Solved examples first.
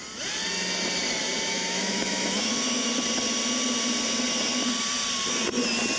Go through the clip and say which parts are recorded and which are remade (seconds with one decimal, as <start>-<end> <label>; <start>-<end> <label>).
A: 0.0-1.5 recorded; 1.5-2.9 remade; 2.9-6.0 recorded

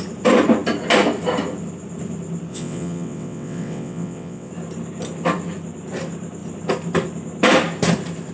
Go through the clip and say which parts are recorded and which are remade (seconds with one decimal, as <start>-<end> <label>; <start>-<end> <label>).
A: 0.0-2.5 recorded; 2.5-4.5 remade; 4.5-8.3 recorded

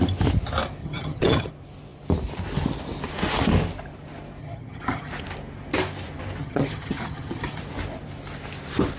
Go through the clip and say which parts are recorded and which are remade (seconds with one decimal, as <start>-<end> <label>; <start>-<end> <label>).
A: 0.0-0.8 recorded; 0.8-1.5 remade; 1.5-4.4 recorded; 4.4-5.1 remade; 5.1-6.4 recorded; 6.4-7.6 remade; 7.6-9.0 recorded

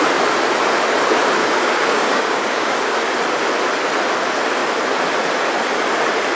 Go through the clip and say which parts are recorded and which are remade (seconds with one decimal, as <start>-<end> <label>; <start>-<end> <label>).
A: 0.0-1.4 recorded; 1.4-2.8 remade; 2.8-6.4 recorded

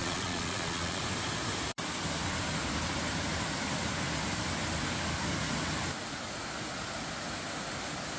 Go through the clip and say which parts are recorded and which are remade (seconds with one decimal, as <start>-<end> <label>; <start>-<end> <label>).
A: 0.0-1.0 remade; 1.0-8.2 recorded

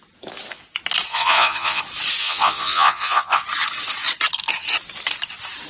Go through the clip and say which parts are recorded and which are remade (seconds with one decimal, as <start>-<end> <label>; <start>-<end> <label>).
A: 0.0-1.1 recorded; 1.1-1.8 remade; 1.8-2.2 recorded; 2.2-3.4 remade; 3.4-5.7 recorded

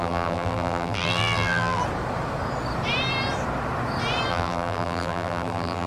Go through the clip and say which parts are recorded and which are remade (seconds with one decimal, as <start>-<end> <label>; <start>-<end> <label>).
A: 0.0-1.8 remade; 1.8-4.3 recorded; 4.3-5.9 remade